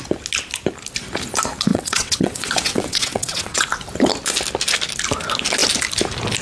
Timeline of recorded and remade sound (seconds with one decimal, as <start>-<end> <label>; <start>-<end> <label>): 0.0-1.7 recorded; 1.7-3.6 remade; 3.6-6.4 recorded